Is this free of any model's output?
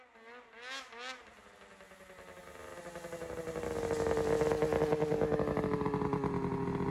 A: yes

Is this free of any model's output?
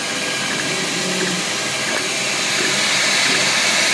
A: yes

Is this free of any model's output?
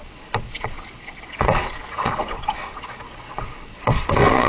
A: no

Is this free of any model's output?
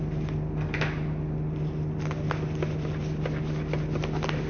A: yes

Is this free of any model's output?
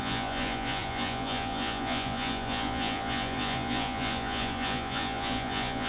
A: no